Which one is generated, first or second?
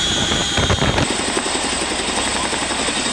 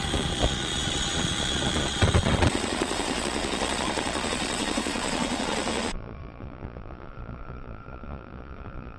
second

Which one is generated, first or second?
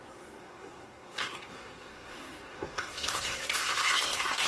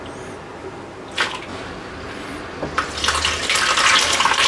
first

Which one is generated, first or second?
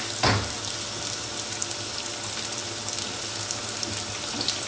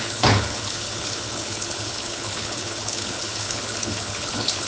second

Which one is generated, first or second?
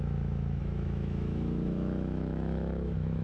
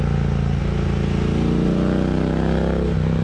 first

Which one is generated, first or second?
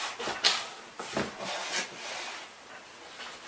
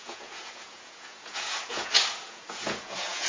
second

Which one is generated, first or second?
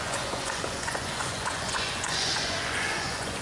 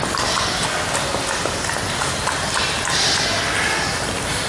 first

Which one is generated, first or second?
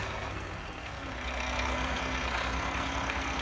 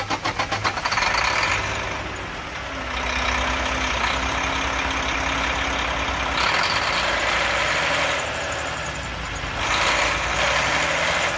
first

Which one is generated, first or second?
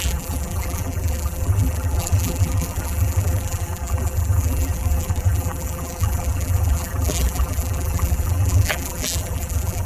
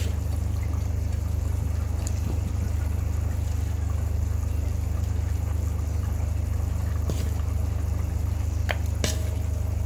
first